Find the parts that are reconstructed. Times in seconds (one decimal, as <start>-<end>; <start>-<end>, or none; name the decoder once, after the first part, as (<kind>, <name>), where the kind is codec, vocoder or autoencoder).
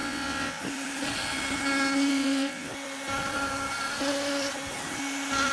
0.0-0.6 (vocoder, WaveNeXt); 2.1-2.7